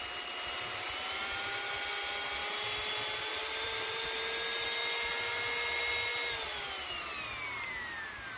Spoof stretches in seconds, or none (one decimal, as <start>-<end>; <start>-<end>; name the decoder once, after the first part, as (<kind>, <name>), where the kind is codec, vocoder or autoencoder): 3.3-4.2 (vocoder, BigVGAN v2)